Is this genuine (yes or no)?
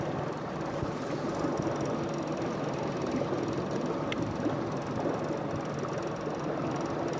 yes